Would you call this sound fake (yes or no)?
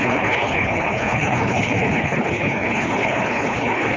yes